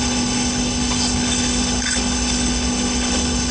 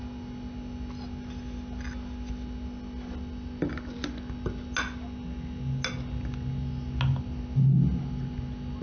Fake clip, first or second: first